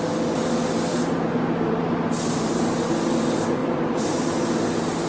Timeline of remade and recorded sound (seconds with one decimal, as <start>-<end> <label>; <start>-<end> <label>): 0.0-3.6 recorded; 3.6-4.2 remade; 4.2-5.1 recorded